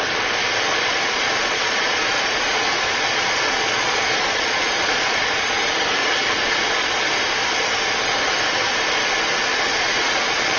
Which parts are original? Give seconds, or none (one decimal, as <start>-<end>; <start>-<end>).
0.0-0.7; 5.6-6.0; 7.0-9.5